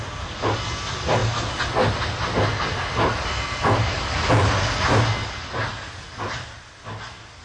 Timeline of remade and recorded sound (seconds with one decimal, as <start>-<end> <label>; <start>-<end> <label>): 0.0-7.4 recorded